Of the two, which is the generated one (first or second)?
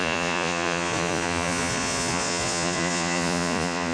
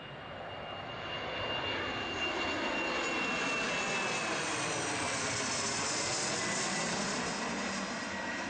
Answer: first